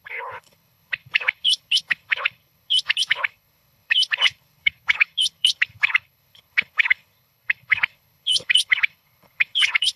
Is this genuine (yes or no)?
no